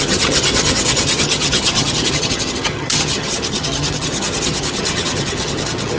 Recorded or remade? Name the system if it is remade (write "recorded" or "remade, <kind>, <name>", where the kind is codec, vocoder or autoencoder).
remade, vocoder, HiFi-GAN